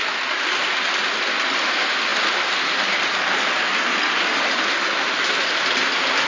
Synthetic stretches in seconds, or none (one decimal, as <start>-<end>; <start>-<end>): none